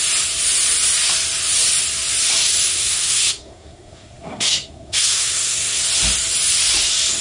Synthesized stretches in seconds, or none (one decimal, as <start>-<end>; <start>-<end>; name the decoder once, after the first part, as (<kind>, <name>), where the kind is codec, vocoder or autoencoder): 2.7-5.8 (codec, SNAC)